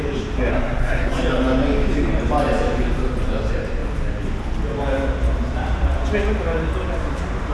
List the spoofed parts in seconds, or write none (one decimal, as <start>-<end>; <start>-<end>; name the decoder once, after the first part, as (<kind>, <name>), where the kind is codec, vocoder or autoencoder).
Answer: 0.5-1.1 (codec, SNAC)

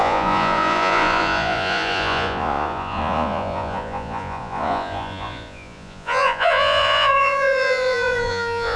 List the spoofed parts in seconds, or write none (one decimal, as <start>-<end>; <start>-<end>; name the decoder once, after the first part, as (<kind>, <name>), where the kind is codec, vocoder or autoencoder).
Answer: 0.0-8.8 (vocoder, Vocos)

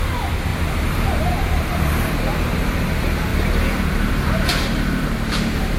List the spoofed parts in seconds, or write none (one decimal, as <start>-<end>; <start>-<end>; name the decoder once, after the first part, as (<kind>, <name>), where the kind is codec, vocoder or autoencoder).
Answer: 0.5-1.9 (vocoder, BigVGAN v2)

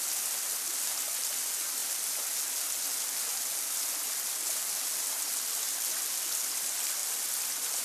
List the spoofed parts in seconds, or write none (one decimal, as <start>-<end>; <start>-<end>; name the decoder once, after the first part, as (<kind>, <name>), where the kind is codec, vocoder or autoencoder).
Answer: none

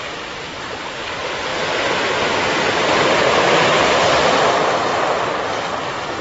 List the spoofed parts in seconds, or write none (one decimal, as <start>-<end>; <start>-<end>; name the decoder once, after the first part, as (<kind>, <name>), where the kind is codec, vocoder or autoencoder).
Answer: 3.7-4.3 (vocoder, BigVGAN v2)

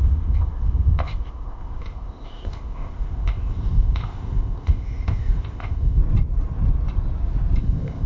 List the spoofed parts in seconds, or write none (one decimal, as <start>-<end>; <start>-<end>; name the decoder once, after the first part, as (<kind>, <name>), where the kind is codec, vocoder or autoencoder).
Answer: 0.0-6.0 (codec, ZipCodec); 7.6-8.1

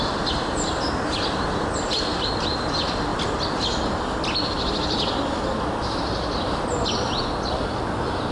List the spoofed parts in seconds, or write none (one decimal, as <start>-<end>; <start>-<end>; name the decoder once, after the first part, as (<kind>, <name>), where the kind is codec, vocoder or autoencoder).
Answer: none

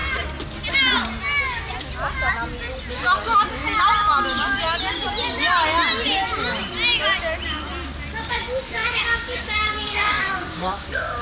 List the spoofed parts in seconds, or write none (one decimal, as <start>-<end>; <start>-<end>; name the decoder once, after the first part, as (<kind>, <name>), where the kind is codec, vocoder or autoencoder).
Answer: 2.9-3.6 (codec, DAC); 8.3-11.2